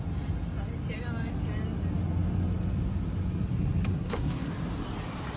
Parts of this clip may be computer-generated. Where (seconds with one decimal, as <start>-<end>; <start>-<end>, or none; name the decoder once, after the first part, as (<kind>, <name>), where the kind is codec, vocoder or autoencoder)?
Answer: 3.9-4.5 (codec, SNAC)